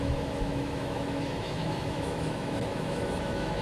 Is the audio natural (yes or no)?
no